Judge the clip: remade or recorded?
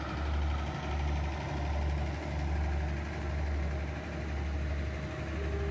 recorded